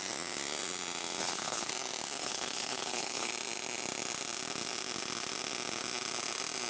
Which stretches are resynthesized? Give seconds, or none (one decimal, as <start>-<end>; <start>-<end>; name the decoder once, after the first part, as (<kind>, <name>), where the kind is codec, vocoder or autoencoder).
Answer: 1.2-1.7 (codec, HILCodec); 2.2-3.3